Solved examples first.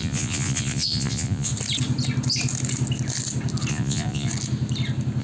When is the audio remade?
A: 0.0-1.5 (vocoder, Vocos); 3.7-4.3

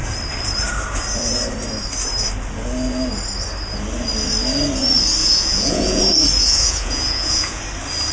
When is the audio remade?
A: 5.2-6.0 (vocoder, Vocos); 6.4-7.6

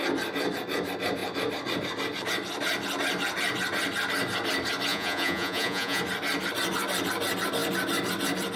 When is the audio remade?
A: 4.9-6.0 (vocoder, Vocos)

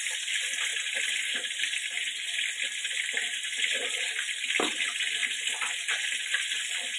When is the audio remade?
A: none

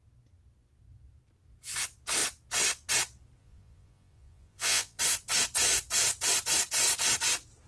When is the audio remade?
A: 3.4-5.0 (vocoder, Vocos)

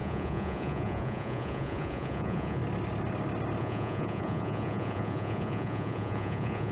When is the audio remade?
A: 0.0-2.6 (vocoder, Vocos); 3.6-6.7

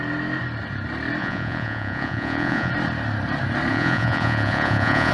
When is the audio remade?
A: 1.2-2.7 (vocoder, Vocos); 3.7-5.1